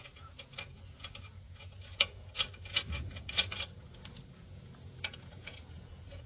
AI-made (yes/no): yes